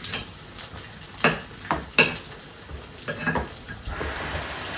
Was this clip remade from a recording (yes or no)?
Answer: no